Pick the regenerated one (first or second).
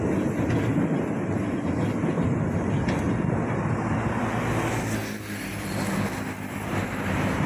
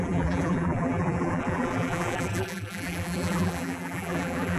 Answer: second